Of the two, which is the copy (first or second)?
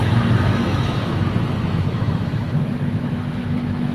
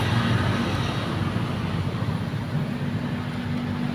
first